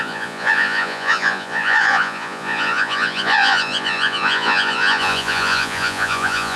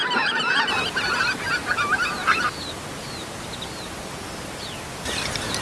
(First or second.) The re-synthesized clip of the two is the first